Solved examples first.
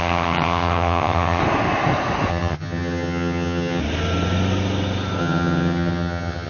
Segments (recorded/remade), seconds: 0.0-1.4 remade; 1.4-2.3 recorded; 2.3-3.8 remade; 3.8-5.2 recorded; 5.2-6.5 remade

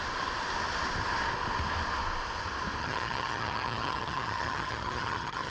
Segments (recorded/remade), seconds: 0.0-2.8 recorded; 2.8-5.5 remade

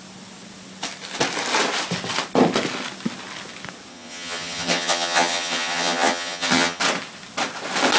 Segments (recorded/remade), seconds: 0.0-3.9 recorded; 3.9-6.8 remade; 6.8-8.0 recorded

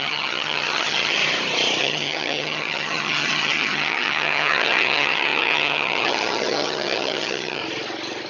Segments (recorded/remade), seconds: 0.0-1.2 remade; 1.2-1.8 recorded; 1.8-7.6 remade; 7.6-8.3 recorded

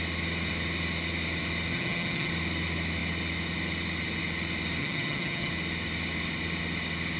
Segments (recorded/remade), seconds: 0.0-1.7 recorded; 1.7-2.3 remade; 2.3-4.8 recorded; 4.8-5.5 remade; 5.5-7.2 recorded

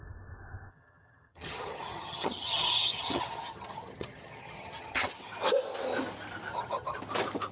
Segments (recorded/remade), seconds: 0.0-0.7 recorded; 0.7-5.2 remade; 5.2-6.5 recorded; 6.5-7.0 remade; 7.0-7.5 recorded